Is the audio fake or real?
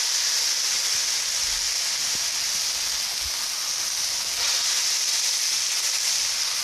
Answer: real